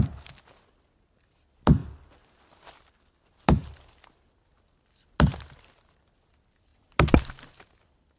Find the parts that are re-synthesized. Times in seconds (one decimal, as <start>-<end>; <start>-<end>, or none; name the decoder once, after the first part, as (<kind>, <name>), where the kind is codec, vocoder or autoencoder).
none